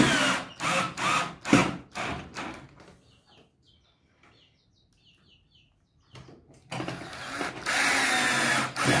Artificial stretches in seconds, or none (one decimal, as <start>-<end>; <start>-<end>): none